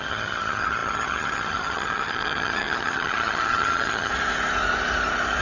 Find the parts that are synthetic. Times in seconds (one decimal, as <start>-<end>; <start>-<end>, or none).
0.0-4.1